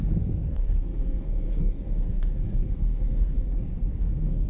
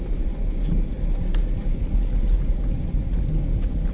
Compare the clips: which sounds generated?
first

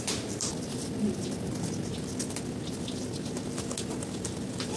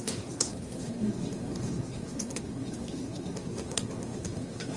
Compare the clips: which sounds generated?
second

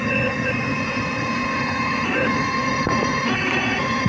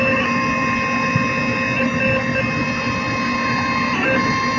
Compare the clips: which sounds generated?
first